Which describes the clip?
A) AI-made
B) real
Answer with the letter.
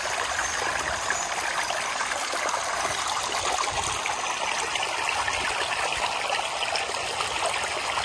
B